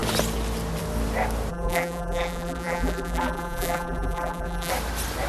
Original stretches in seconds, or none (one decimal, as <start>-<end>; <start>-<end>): 0.0-1.5; 4.7-5.3